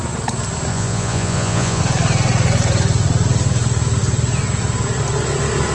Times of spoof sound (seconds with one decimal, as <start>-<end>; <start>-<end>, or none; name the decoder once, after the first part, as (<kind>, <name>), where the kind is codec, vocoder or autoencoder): 0.7-1.8 (vocoder, Vocos)